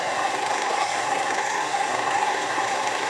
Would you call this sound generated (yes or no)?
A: yes